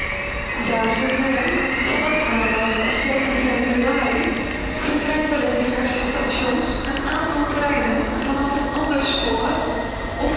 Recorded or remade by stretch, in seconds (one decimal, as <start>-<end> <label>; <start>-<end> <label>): 0.0-4.6 recorded; 4.6-5.7 remade; 5.7-10.4 recorded